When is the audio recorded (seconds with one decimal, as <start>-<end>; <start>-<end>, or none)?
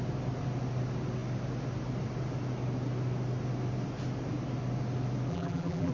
0.0-5.3